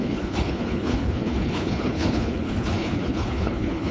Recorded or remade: remade